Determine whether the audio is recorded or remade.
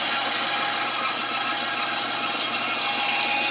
recorded